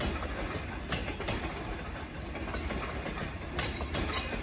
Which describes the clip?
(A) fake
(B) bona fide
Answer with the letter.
B